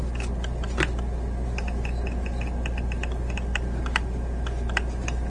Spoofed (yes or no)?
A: no